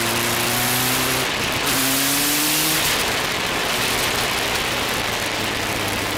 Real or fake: real